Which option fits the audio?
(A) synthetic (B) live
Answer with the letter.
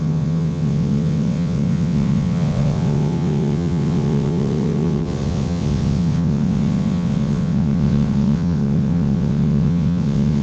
A